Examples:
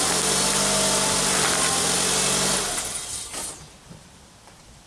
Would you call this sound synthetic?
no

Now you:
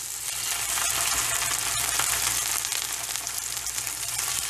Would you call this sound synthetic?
yes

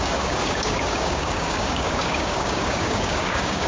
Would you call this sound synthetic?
yes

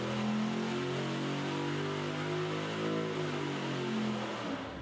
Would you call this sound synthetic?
no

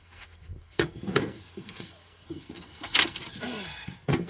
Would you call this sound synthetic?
yes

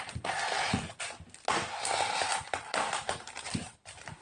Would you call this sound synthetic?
no